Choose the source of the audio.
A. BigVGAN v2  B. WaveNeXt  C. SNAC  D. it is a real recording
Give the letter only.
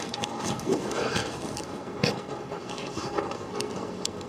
C